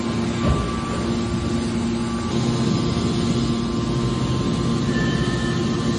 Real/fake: real